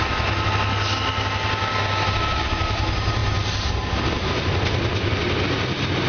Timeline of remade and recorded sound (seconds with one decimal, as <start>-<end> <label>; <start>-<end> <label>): 0.0-6.1 recorded